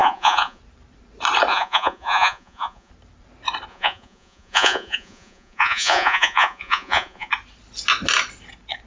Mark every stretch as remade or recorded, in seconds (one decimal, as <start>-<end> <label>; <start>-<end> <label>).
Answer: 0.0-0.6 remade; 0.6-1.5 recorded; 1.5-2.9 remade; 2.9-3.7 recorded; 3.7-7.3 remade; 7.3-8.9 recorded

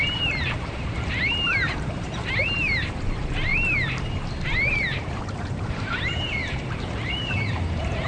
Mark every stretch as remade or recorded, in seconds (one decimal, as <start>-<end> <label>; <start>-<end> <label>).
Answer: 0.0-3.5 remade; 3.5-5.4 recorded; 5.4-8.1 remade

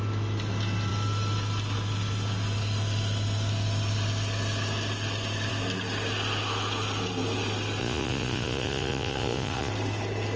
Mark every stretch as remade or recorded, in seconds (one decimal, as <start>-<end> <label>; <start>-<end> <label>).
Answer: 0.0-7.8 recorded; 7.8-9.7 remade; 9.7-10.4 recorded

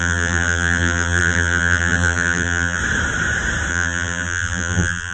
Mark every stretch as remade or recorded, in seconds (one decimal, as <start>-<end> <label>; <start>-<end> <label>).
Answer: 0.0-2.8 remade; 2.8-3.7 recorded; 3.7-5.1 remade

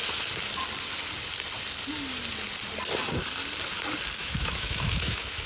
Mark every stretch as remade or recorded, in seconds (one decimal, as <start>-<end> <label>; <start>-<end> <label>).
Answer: 0.0-4.2 recorded; 4.2-5.5 remade

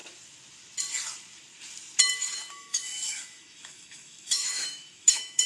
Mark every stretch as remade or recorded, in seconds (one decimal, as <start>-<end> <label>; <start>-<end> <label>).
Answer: 0.0-2.5 recorded; 2.5-5.5 remade

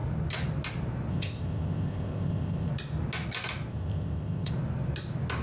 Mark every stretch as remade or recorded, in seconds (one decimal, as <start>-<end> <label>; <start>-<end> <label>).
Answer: 0.0-1.1 recorded; 1.1-2.7 remade; 2.7-3.7 recorded; 3.7-4.5 remade; 4.5-5.4 recorded

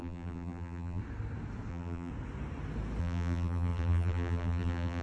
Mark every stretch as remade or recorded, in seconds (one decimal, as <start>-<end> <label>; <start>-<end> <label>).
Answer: 0.0-1.0 remade; 1.0-1.7 recorded; 1.7-2.1 remade; 2.1-3.0 recorded; 3.0-5.0 remade